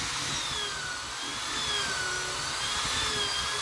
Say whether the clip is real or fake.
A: real